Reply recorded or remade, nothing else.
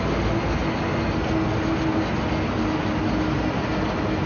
recorded